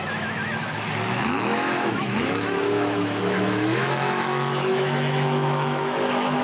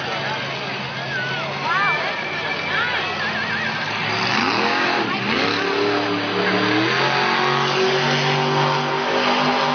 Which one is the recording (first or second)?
second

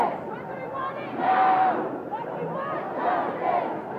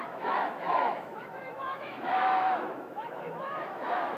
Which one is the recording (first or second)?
first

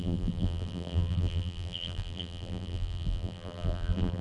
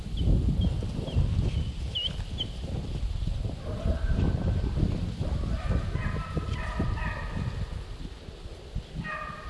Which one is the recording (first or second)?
second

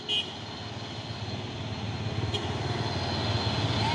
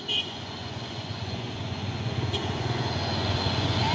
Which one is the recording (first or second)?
first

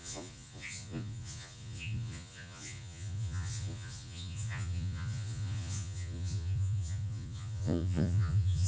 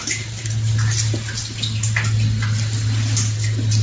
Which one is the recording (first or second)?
second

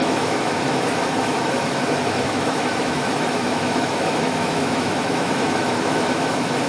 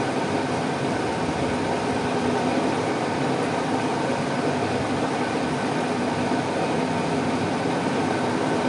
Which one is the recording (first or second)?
second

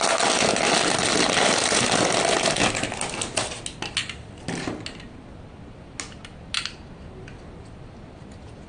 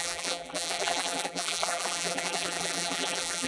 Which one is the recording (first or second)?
first